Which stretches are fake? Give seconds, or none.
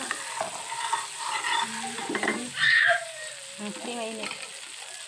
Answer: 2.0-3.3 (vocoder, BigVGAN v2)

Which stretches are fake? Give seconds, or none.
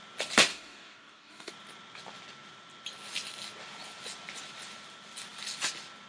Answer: 0.5-1.5 (codec, DAC)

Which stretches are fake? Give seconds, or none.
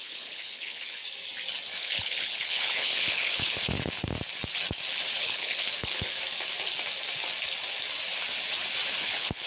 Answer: 0.0-1.0 (codec, HILCodec); 1.8-3.7; 5.2-6.1; 9.0-9.5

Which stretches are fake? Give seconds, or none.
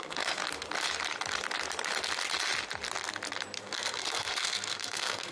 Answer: 0.0-0.4 (codec, SNAC); 3.6-5.3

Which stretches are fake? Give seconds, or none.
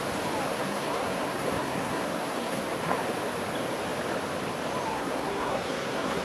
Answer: 0.5-2.6 (codec, SNAC); 4.9-6.2